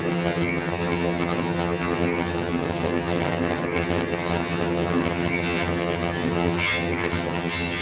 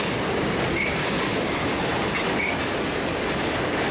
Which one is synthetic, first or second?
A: first